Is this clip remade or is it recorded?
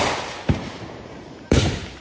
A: remade